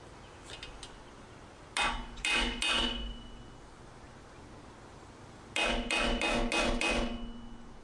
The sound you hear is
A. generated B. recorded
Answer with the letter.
B